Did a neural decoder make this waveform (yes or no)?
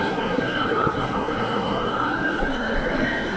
yes